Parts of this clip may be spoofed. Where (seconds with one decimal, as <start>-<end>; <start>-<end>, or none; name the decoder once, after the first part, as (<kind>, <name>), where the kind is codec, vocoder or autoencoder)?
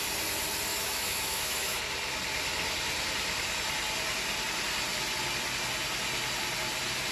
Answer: 0.7-1.8 (autoencoder, DAC-VAE)